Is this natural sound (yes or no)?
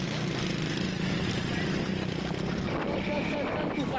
yes